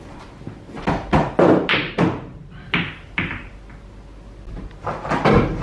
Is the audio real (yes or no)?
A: yes